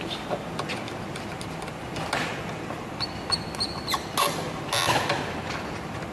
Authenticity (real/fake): real